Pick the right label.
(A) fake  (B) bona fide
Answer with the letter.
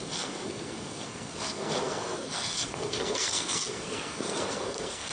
A